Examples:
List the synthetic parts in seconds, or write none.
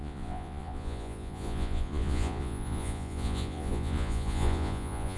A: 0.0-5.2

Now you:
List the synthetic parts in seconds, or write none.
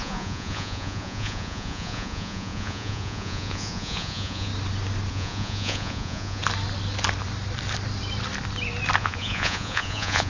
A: 0.0-4.5; 5.1-6.4; 9.0-10.3